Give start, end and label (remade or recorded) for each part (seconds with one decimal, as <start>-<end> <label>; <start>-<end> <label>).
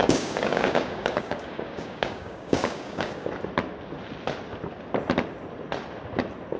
0.0-3.3 remade; 3.3-6.6 recorded